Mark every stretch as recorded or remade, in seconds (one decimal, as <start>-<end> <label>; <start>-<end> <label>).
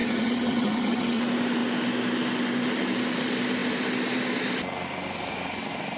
0.0-1.2 remade; 1.2-6.0 recorded